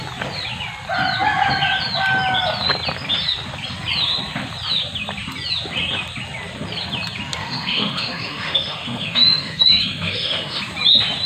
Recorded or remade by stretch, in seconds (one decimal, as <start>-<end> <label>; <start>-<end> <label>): 0.0-7.4 recorded; 7.4-10.6 remade; 10.6-11.3 recorded